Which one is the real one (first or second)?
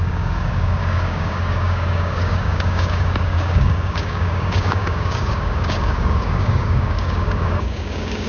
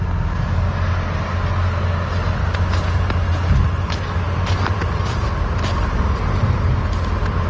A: second